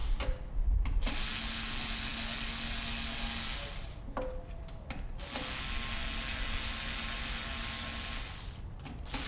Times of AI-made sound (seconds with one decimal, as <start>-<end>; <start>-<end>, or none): none